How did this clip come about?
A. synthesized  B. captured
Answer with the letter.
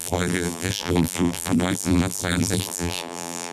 A